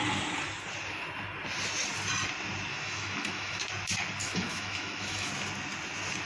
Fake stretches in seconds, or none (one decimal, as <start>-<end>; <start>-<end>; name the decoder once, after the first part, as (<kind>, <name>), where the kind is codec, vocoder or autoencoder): 2.7-3.6 (autoencoder, DAC-VAE); 4.2-5.3